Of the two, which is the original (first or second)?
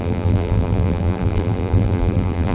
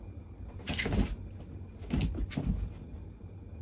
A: second